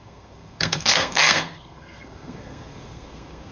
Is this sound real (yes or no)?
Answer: no